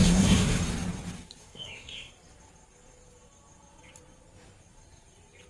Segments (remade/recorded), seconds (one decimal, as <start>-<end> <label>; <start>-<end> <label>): 0.0-0.6 remade; 0.6-1.4 recorded; 1.4-2.1 remade; 2.1-5.5 recorded